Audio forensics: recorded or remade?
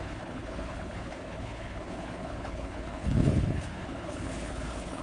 remade